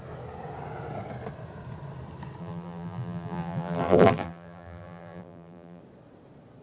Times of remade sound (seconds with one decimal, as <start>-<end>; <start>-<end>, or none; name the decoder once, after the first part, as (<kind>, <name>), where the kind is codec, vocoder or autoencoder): 2.4-5.8 (vocoder, BigVGAN v2)